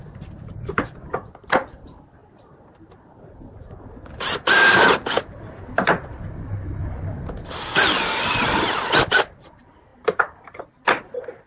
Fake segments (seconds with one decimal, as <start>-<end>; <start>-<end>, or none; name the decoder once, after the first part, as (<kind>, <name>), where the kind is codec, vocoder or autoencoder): none

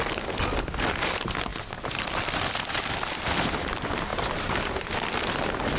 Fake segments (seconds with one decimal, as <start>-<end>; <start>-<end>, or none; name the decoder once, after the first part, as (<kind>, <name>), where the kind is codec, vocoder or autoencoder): 1.5-2.6 (vocoder, BigVGAN v2)

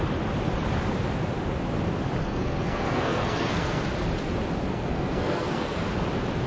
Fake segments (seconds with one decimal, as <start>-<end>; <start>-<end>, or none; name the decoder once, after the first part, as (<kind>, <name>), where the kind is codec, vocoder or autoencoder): 2.2-3.8 (codec, SNAC); 4.7-5.8

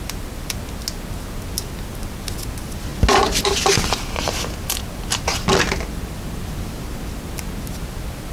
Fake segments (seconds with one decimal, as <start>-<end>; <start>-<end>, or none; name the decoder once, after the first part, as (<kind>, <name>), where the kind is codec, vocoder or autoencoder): none

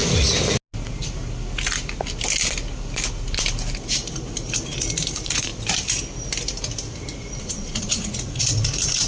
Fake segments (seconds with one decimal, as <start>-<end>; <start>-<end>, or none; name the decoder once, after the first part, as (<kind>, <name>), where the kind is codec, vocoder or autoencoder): 5.1-5.5 (vocoder, Vocos); 7.4-9.1

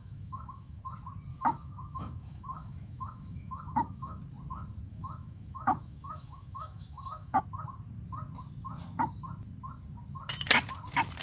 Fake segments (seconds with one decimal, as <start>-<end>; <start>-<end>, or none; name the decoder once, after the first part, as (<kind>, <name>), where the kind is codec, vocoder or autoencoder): 0.0-0.8 (autoencoder, DAC-VAE); 1.3-4.2; 4.9-7.4

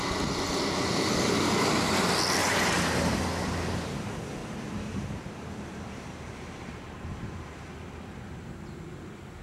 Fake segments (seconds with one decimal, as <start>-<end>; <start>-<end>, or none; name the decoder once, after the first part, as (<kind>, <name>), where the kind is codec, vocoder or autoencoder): 2.4-3.2 (vocoder, BigVGAN v2); 4.4-8.4

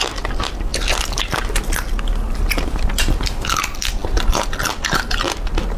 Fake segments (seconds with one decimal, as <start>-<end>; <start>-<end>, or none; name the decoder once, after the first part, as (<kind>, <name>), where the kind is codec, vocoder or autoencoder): none